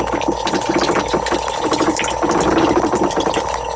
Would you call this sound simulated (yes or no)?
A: no